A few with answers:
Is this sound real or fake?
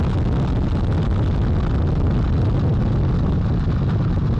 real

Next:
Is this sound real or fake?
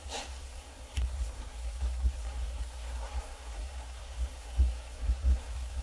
fake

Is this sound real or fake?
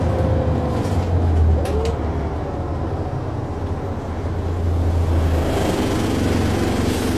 real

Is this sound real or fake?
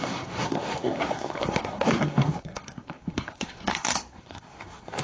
fake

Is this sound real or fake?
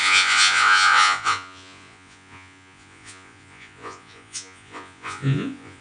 fake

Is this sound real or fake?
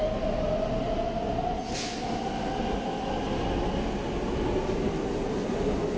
real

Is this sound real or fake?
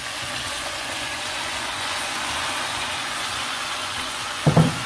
fake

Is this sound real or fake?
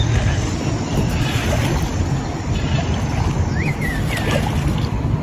real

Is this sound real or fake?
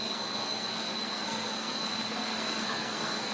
fake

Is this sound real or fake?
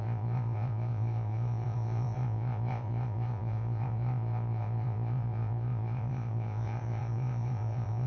fake